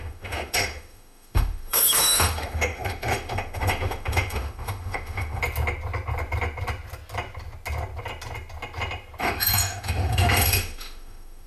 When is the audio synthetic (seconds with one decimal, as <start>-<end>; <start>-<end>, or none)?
0.0-5.4; 9.2-11.5